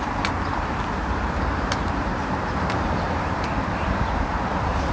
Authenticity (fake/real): fake